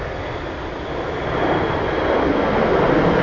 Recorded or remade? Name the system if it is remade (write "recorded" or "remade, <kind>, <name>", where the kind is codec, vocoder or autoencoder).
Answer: recorded